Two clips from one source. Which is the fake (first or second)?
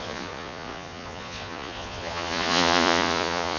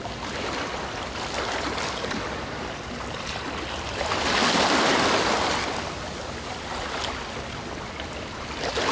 first